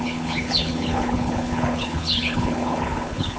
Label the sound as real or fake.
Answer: fake